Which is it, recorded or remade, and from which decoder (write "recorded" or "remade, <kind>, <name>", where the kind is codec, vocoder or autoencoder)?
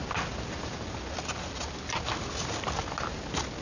recorded